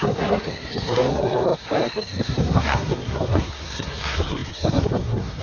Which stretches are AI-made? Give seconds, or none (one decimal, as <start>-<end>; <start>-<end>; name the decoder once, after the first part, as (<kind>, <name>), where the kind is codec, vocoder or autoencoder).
0.0-5.4 (codec, SNAC)